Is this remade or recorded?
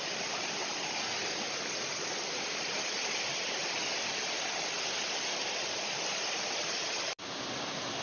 recorded